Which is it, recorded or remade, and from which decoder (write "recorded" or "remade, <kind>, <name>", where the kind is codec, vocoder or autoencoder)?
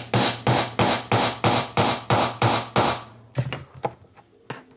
recorded